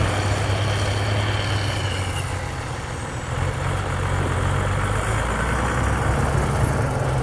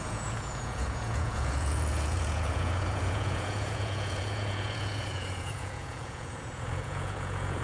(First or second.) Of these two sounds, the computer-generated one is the second